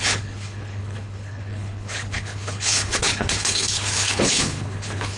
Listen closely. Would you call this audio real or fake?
fake